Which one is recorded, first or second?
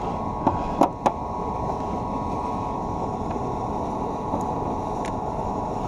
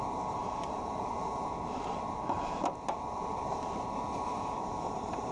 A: first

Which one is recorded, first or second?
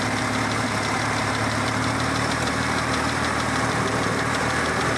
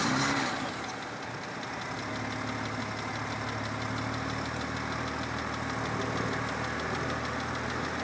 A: second